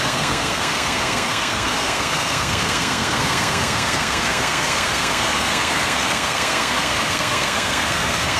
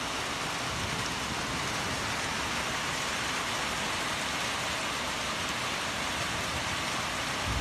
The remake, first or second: first